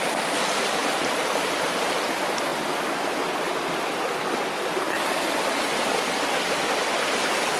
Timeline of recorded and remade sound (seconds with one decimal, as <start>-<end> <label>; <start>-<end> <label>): 0.0-7.6 recorded